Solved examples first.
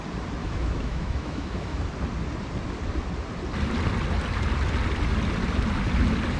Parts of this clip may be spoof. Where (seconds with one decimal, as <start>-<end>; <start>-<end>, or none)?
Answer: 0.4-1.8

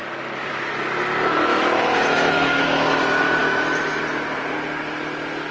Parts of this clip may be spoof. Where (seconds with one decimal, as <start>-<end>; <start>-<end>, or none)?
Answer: 1.5-3.0; 3.4-4.0

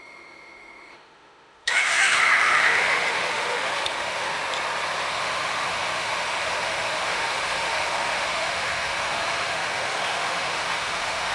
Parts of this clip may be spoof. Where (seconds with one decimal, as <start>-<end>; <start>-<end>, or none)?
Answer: 0.0-4.3; 5.1-11.3

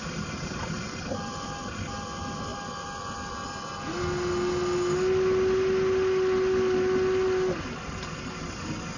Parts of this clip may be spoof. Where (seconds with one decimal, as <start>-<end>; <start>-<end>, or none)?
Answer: none